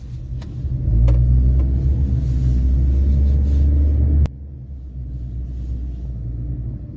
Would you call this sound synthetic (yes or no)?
no